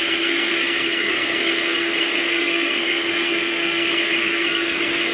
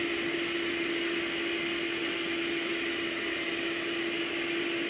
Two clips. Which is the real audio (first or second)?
second